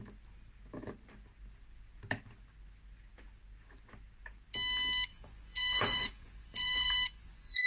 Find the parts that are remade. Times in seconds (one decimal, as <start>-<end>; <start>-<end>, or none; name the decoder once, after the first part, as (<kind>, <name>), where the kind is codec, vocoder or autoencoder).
5.1-7.7 (vocoder, Vocos)